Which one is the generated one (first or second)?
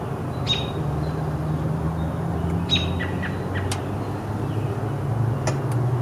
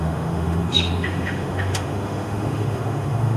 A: second